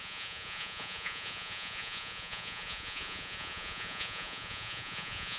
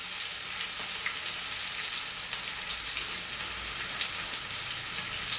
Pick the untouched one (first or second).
second